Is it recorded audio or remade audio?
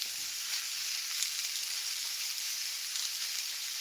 recorded